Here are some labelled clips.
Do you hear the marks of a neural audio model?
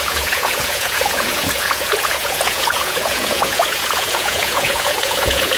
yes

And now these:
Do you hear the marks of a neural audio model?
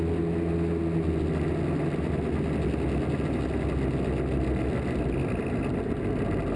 no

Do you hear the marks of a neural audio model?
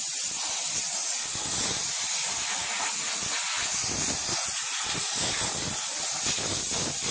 no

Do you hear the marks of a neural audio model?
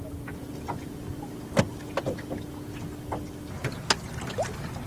no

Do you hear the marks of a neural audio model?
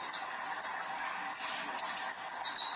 no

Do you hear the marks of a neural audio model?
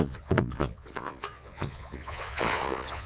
yes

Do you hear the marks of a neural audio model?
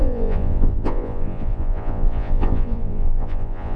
yes